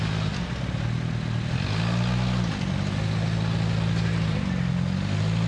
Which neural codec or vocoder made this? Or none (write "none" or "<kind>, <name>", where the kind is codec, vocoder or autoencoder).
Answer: none